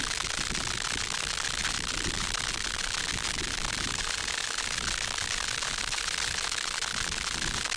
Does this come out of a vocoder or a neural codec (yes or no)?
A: no